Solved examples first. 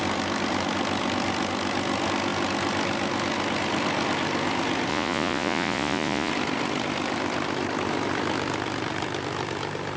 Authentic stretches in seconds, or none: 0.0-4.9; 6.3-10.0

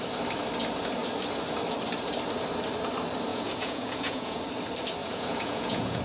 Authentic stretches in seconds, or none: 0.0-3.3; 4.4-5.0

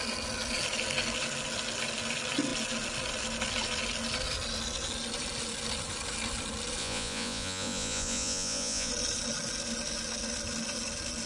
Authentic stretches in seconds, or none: 0.0-6.8; 8.9-11.3